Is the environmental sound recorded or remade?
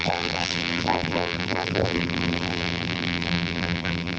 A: remade